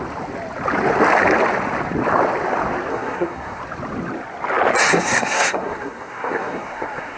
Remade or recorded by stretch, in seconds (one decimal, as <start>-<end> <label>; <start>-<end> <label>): 0.0-2.9 recorded; 2.9-3.6 remade; 3.6-4.9 recorded; 4.9-7.2 remade